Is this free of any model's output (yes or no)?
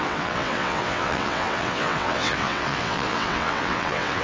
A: no